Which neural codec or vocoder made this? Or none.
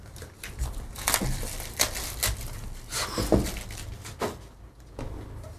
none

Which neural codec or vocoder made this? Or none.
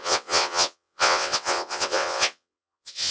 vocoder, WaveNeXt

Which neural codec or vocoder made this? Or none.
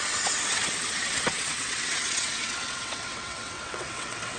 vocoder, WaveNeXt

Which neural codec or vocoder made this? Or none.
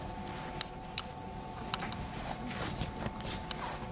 none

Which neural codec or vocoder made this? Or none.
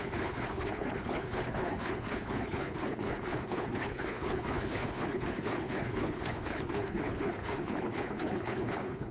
codec, HILCodec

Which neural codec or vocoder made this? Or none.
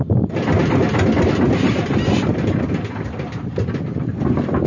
none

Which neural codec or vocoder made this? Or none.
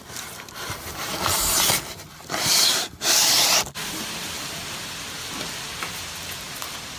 vocoder, BigVGAN v2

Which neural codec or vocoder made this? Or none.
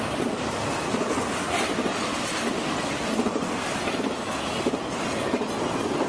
none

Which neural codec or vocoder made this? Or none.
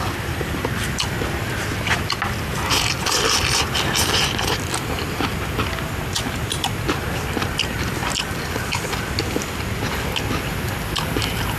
none